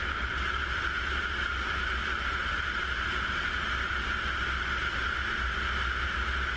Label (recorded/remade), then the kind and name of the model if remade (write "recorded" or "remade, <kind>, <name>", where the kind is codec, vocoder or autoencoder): recorded